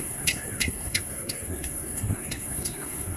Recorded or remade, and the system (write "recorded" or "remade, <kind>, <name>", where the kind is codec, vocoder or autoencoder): remade, codec, SNAC